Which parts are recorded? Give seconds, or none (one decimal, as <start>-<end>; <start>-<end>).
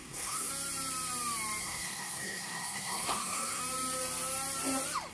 0.5-1.6; 3.6-5.1